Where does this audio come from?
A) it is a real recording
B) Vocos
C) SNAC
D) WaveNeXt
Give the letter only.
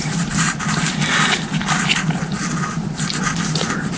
A